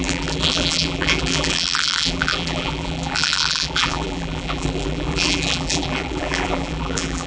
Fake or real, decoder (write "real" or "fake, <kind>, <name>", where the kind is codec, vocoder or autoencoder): fake, vocoder, BigVGAN v2